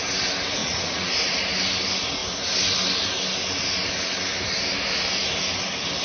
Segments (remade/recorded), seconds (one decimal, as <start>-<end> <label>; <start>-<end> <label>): 0.0-0.6 recorded; 0.6-1.1 remade; 1.1-6.0 recorded